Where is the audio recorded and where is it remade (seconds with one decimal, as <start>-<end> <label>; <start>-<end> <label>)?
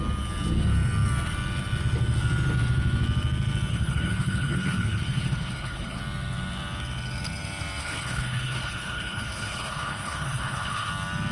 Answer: 0.0-3.7 recorded; 3.7-6.0 remade; 6.0-7.8 recorded; 7.8-10.9 remade; 10.9-11.3 recorded